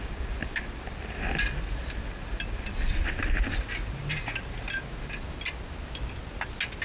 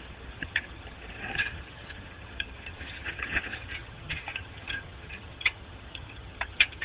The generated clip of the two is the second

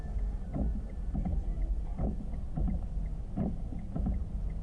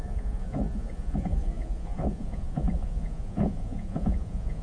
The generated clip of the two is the second